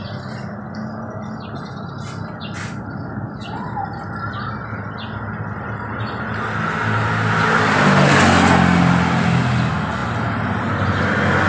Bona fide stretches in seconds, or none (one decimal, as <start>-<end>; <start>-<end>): 0.0-11.5